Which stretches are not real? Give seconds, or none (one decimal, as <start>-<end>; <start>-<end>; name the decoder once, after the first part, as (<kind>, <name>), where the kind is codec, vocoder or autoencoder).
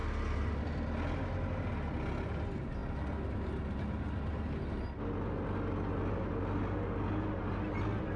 none